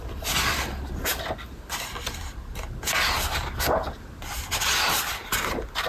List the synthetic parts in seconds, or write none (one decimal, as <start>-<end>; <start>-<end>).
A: none